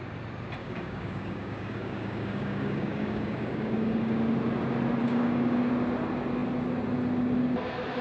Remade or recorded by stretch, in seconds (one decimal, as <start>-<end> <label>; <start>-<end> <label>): 0.0-0.6 recorded; 0.6-4.2 remade; 4.2-5.0 recorded; 5.0-5.7 remade; 5.7-8.0 recorded